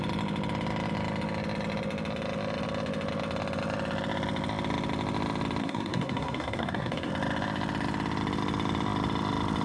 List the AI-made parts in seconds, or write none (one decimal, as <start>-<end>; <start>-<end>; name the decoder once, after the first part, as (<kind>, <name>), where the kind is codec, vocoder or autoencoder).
5.6-7.1 (codec, SNAC)